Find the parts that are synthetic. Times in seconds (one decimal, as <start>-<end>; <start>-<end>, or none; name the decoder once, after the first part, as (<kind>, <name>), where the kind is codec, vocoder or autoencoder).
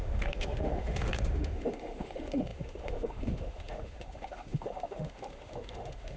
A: 0.0-6.2 (autoencoder, DAC-VAE)